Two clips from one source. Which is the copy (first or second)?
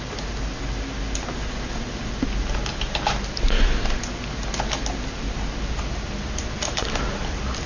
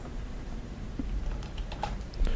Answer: second